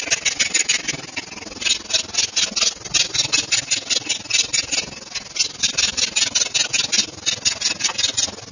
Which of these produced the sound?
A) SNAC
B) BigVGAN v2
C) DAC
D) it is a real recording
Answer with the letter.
D